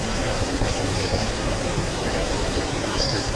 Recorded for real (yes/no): no